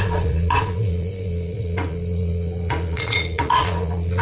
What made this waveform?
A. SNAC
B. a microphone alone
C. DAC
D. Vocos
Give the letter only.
D